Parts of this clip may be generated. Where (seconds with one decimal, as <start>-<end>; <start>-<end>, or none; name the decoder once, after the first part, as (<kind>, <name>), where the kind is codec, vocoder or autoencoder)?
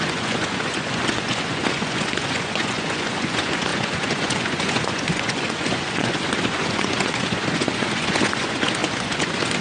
0.0-9.6 (vocoder, Vocos)